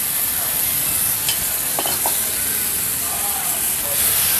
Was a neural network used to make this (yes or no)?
no